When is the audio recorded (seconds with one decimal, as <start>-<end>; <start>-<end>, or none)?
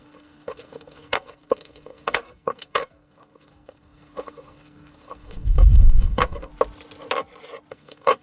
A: 6.5-7.7